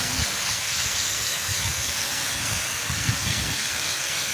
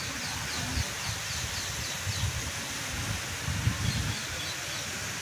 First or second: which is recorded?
second